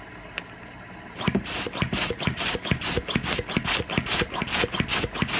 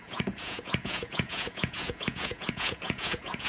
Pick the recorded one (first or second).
first